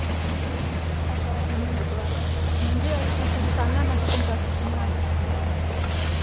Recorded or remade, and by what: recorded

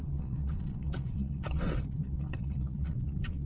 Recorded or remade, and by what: remade, vocoder, WaveNeXt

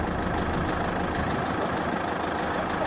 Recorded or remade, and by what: recorded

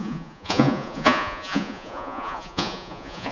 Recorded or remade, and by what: remade, vocoder, Vocos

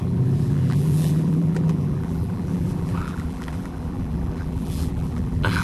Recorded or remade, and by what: remade, vocoder, BigVGAN v2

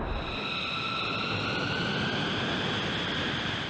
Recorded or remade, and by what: recorded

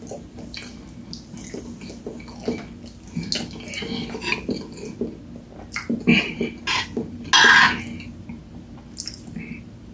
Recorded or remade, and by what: recorded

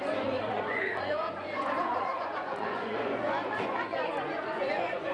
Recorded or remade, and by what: remade, vocoder, Vocos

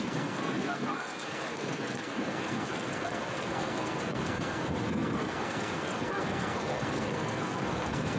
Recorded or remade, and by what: remade, codec, SNAC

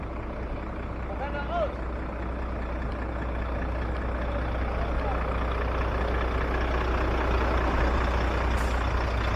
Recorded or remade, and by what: recorded